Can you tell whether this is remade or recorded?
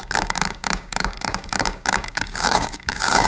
remade